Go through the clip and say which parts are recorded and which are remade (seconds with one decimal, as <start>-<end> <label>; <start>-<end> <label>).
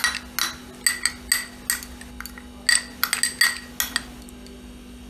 0.0-5.1 recorded